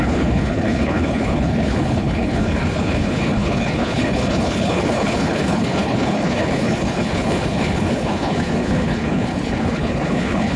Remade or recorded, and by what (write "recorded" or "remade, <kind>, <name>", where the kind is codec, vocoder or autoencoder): remade, codec, HILCodec